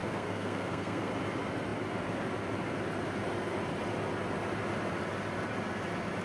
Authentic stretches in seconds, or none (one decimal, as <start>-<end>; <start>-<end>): 1.1-6.2